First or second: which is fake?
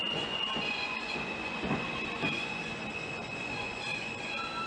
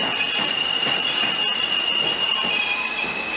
first